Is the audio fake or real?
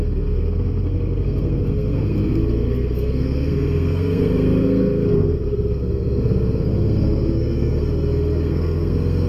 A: fake